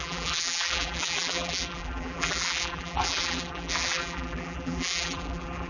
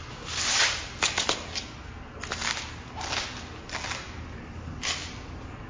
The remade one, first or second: first